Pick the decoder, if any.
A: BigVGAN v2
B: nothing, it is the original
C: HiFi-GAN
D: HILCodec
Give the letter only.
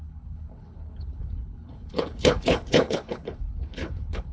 D